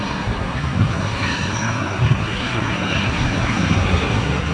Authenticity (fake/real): fake